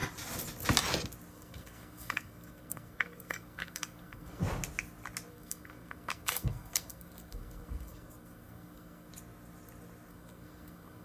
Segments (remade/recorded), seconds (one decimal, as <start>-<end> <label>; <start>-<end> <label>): 0.0-1.3 recorded; 1.3-4.4 remade; 4.4-5.3 recorded; 5.3-9.1 remade; 9.1-10.1 recorded; 10.1-11.0 remade